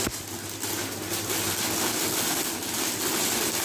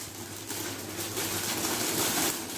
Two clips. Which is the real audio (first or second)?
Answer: first